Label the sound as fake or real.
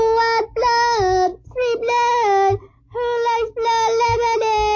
real